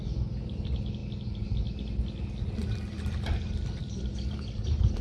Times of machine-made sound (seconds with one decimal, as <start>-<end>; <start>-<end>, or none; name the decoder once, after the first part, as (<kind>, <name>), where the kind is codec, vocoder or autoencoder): none